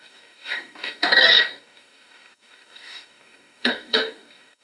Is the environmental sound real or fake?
fake